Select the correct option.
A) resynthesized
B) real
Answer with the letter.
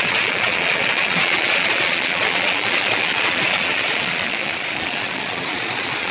A